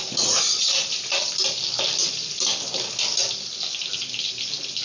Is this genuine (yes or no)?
yes